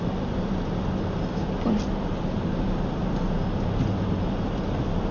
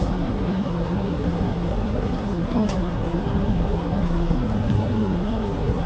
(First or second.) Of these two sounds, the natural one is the first